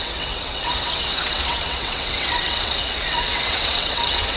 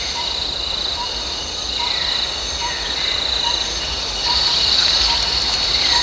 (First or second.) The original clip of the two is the second